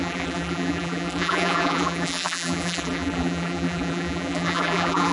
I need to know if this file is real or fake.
fake